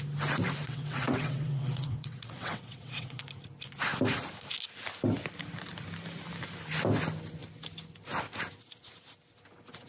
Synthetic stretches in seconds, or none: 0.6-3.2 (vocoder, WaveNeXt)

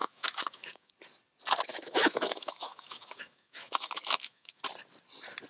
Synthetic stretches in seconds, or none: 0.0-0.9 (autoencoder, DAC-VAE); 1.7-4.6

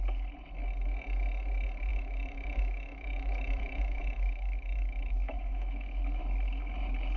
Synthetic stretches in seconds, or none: 1.9-6.2 (autoencoder, DAC-VAE)

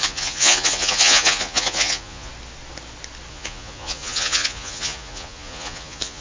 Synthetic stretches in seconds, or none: 0.0-2.3 (vocoder, Vocos); 3.3-6.2

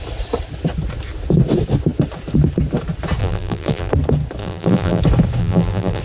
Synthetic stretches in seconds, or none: 3.2-3.9 (vocoder, BigVGAN v2); 4.4-5.0; 5.4-6.0